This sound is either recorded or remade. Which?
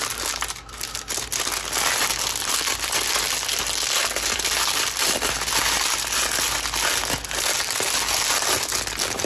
recorded